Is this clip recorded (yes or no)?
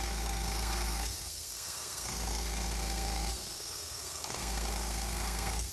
no